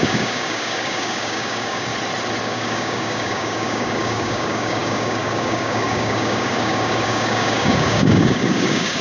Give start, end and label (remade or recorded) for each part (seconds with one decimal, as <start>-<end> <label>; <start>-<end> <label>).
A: 0.0-1.9 remade; 1.9-2.4 recorded; 2.4-9.0 remade

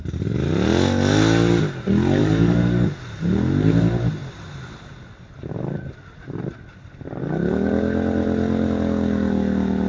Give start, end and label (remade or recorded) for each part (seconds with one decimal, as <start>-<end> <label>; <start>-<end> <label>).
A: 0.0-2.2 recorded; 2.2-2.9 remade; 2.9-9.9 recorded

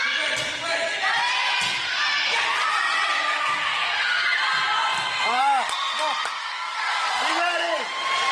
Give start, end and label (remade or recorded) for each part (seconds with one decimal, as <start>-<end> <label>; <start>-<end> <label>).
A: 0.0-6.4 recorded; 6.4-7.1 remade; 7.1-8.3 recorded

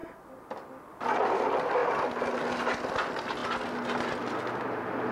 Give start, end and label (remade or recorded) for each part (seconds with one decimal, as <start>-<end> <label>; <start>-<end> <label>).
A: 0.0-5.1 recorded

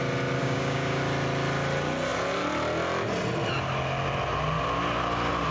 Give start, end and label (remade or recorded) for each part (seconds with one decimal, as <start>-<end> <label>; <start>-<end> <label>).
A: 0.0-0.4 recorded; 0.4-1.0 remade; 1.0-5.5 recorded

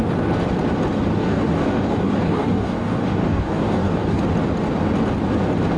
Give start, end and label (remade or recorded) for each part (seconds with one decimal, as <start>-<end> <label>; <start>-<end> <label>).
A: 0.0-1.2 recorded; 1.2-4.2 remade; 4.2-5.8 recorded

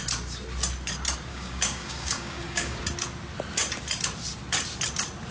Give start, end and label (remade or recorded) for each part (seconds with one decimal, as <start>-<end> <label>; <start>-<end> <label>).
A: 0.0-1.3 recorded; 1.3-2.8 remade; 2.8-5.3 recorded

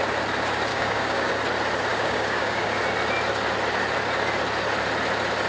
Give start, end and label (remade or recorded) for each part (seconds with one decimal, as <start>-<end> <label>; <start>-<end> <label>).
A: 0.0-0.7 recorded; 0.7-1.3 remade; 1.3-1.9 recorded; 1.9-2.8 remade; 2.8-5.5 recorded